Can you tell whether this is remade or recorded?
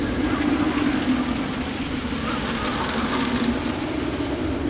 recorded